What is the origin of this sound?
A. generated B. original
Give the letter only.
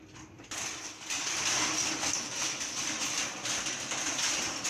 B